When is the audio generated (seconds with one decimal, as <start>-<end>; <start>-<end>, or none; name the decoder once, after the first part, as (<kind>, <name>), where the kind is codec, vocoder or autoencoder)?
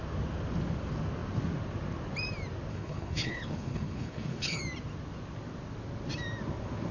2.7-4.6 (codec, HILCodec)